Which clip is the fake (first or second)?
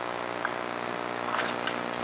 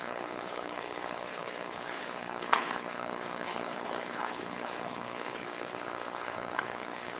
second